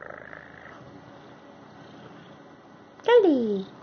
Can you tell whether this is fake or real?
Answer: real